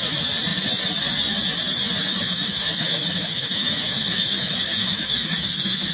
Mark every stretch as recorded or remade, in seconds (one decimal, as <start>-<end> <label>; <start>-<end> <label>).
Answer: 0.0-2.1 recorded; 2.1-5.9 remade